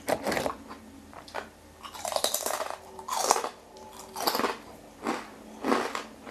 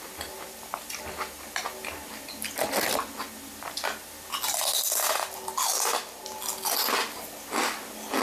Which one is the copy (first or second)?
first